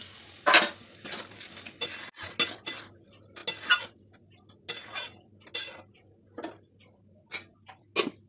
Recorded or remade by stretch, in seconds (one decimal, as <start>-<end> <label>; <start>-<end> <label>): 0.0-8.3 recorded